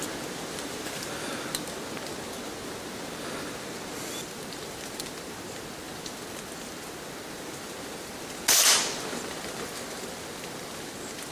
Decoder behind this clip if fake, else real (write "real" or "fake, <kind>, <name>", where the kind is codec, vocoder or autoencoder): real